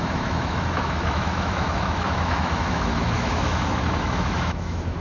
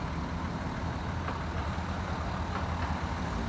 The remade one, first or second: first